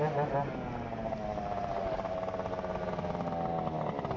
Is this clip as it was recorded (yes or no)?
yes